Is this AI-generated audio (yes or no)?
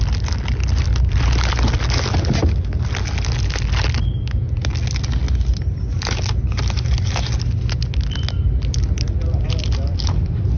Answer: no